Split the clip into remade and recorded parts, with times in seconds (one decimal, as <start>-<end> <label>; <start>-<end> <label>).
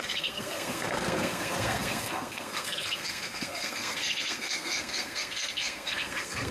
0.0-6.5 remade